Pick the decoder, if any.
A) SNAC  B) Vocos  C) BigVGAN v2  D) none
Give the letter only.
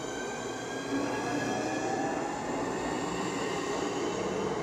D